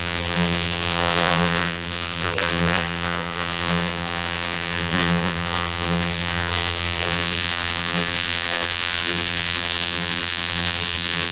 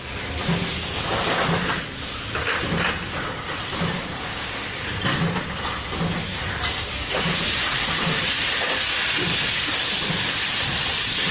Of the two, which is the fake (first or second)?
first